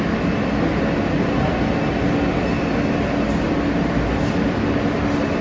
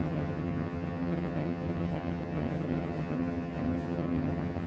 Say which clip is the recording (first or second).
first